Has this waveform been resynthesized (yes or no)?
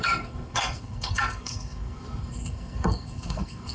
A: yes